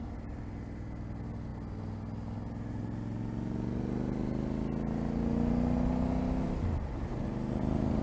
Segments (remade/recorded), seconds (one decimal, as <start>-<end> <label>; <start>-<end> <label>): 0.0-8.0 recorded